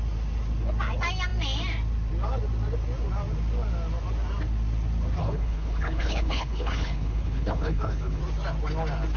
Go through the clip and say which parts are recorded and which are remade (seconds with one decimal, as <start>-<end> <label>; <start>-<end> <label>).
0.0-5.2 recorded; 5.2-8.2 remade; 8.2-9.2 recorded